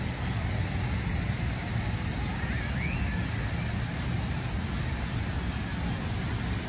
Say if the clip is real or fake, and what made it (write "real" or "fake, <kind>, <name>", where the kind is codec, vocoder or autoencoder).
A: real